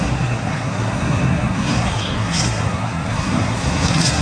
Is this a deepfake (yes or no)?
yes